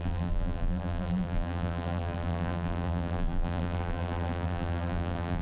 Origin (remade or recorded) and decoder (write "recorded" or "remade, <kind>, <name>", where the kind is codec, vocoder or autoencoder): remade, vocoder, BigVGAN v2